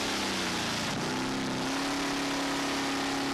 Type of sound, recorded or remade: recorded